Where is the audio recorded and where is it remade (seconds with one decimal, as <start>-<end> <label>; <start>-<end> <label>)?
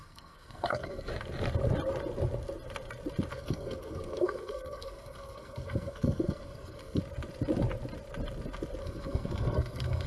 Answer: 0.0-1.1 remade; 1.1-3.3 recorded; 3.3-7.0 remade; 7.0-8.8 recorded; 8.8-10.1 remade